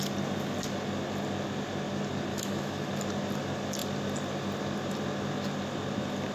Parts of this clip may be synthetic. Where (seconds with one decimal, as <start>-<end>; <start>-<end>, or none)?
2.3-2.9